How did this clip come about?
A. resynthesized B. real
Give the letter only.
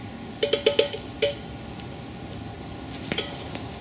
B